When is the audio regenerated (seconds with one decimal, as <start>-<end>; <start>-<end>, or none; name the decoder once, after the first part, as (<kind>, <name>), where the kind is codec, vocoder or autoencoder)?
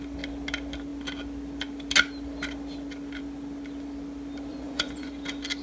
4.5-5.1 (vocoder, Vocos)